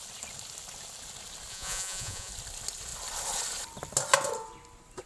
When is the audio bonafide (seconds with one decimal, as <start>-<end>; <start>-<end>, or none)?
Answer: 0.0-1.5; 2.3-5.1